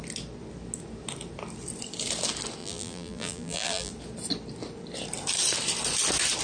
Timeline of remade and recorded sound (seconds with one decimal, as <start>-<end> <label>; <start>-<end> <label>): 0.0-2.6 recorded; 2.6-3.9 remade; 3.9-6.4 recorded